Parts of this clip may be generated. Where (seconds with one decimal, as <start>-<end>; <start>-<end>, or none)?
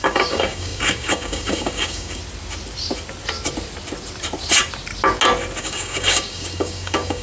0.0-2.2; 5.6-7.2